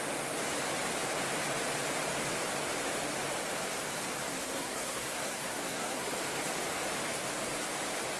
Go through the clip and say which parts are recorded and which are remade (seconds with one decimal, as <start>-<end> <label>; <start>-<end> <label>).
0.0-4.3 recorded; 4.3-6.1 remade; 6.1-8.2 recorded